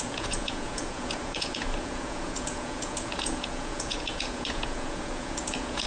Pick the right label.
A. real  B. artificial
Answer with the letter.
B